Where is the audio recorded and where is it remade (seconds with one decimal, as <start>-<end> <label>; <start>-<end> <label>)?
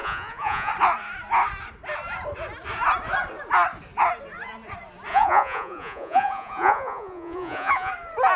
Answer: 0.0-0.7 remade; 0.7-5.1 recorded; 5.1-7.9 remade; 7.9-8.4 recorded